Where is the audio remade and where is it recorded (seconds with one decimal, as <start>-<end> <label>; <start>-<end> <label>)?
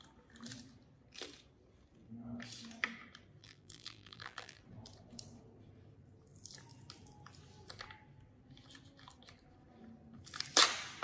0.0-3.4 recorded; 3.4-4.6 remade; 4.6-11.0 recorded